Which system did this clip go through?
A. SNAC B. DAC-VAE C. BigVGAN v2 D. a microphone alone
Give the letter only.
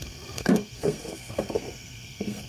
A